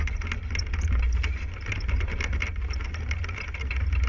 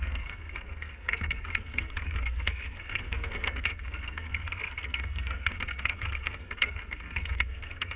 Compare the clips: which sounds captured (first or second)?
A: first